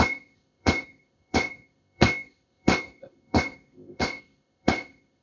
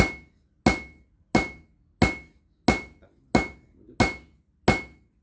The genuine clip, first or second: second